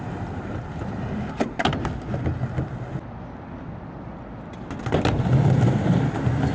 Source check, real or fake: real